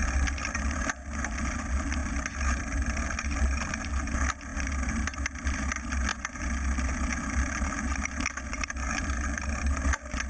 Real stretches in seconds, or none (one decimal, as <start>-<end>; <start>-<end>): 0.0-10.3